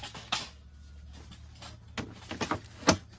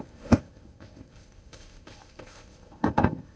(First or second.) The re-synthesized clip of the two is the second